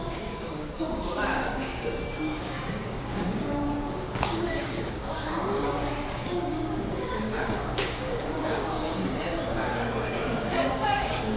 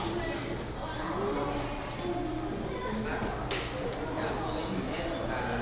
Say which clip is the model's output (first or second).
first